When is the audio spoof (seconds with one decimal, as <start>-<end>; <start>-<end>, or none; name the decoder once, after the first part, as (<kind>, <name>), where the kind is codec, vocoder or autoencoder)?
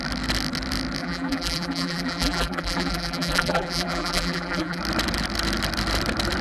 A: 1.0-4.8 (vocoder, BigVGAN v2)